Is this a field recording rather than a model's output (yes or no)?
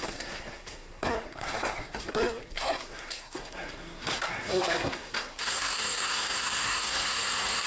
no